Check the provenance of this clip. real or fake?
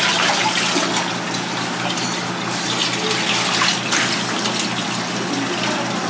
real